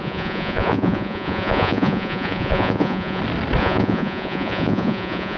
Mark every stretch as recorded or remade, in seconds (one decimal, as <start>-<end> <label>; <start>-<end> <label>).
0.0-3.2 remade; 3.2-3.6 recorded; 3.6-5.4 remade